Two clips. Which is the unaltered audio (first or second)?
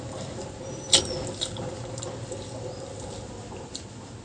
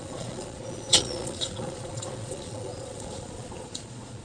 first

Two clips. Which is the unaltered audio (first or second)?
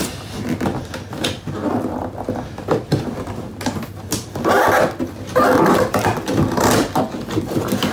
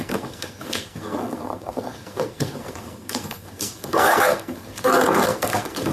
first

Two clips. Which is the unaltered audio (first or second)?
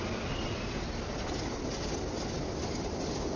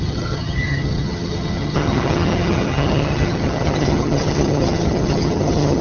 first